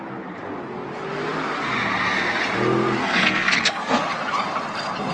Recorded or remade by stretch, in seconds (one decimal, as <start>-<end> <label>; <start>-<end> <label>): 0.0-3.0 recorded; 3.0-4.0 remade; 4.0-5.1 recorded